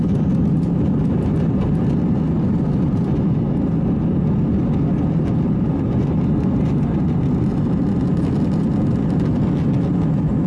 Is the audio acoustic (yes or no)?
yes